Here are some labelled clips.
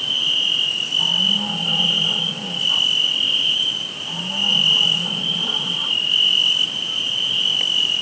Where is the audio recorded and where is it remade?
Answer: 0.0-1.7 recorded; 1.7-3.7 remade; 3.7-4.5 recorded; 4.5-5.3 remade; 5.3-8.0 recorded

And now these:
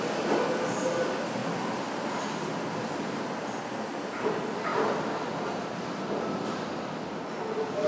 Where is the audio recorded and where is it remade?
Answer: 0.0-1.4 recorded; 1.4-3.6 remade; 3.6-4.7 recorded; 4.7-5.4 remade; 5.4-7.9 recorded

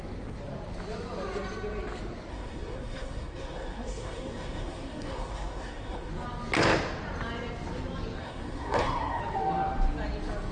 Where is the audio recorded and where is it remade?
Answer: 0.0-2.3 recorded; 2.3-6.1 remade; 6.1-8.2 recorded; 8.2-9.2 remade; 9.2-10.5 recorded